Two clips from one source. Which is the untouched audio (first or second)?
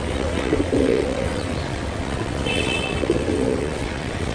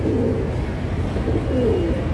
second